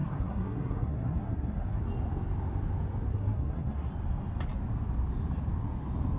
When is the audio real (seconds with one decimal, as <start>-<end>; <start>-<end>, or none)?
1.8-3.1; 3.9-6.2